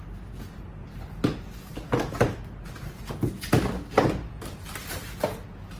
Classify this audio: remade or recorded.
recorded